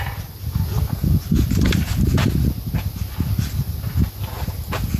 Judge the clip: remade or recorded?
recorded